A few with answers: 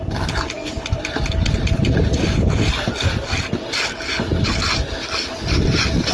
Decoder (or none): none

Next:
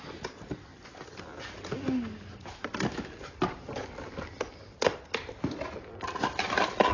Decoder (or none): none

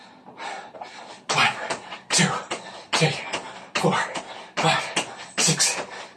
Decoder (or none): none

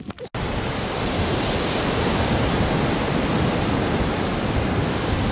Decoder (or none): none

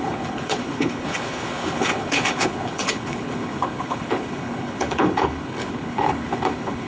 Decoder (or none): codec, HILCodec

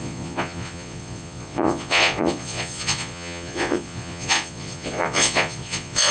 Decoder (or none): vocoder, Vocos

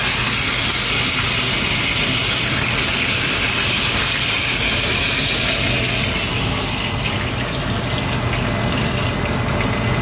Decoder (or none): none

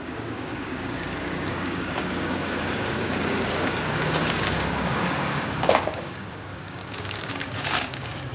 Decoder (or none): codec, DAC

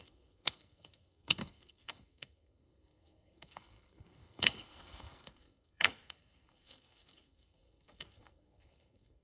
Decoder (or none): codec, SNAC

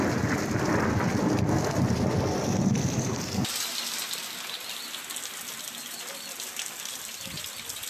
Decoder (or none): none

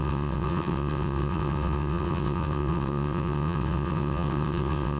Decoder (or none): vocoder, WaveNeXt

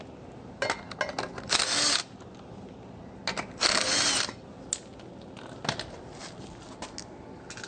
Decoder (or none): none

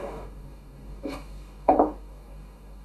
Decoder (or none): codec, DAC